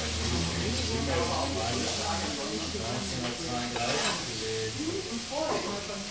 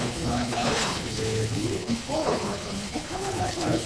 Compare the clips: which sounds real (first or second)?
first